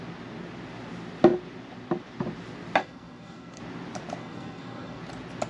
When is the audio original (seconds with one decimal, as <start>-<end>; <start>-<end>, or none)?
0.0-2.8; 3.6-4.2; 5.0-5.5